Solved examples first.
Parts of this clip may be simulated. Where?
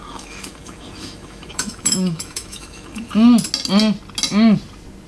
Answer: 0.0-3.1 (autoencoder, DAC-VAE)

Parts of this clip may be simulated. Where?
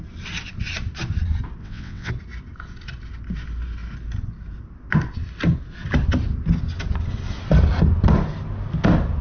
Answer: 1.6-2.1 (vocoder, WaveNeXt)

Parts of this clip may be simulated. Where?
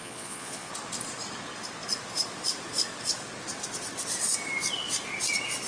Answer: 0.0-0.7 (vocoder, Vocos)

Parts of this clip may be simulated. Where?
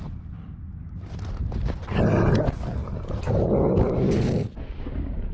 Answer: none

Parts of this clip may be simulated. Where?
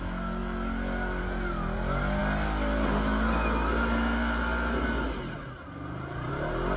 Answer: none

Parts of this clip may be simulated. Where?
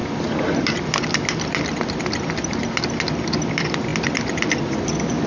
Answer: none